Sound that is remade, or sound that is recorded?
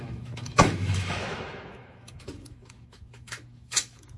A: remade